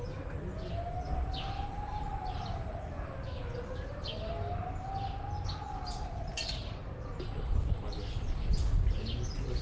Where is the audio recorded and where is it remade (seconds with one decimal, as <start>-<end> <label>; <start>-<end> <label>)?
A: 0.0-9.6 recorded